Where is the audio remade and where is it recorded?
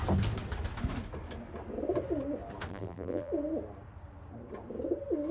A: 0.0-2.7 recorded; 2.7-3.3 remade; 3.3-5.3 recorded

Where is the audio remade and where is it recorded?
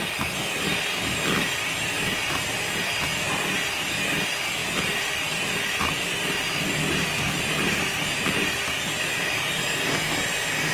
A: 0.0-4.6 recorded; 4.6-5.5 remade; 5.5-10.7 recorded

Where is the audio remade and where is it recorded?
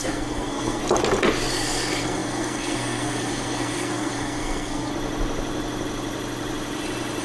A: 0.0-0.8 remade; 0.8-1.5 recorded; 1.5-4.9 remade; 4.9-7.2 recorded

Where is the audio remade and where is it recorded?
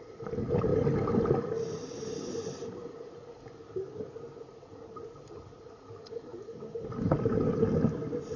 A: 0.0-8.4 recorded